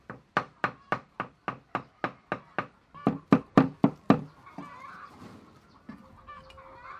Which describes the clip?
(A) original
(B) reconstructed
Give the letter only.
A